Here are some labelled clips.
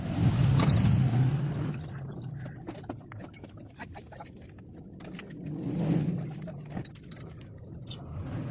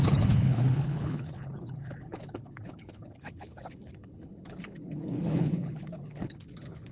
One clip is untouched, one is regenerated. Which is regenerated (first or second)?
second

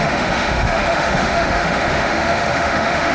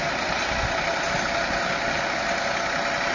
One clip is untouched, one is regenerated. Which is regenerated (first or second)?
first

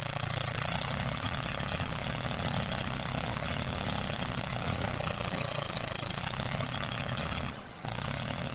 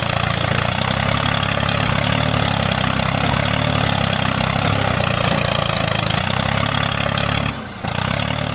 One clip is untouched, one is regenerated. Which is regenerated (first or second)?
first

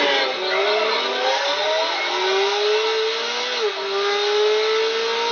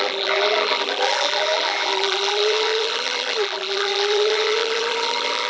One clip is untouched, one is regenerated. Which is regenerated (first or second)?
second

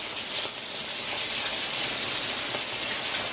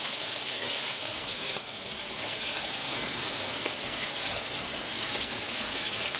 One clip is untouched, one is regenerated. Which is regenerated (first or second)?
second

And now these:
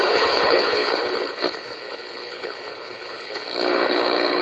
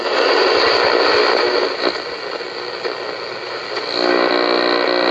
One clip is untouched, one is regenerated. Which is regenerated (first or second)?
first